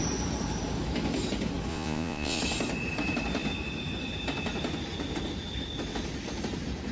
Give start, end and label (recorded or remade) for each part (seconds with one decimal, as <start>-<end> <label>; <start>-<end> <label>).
0.0-1.7 recorded; 1.7-2.4 remade; 2.4-6.9 recorded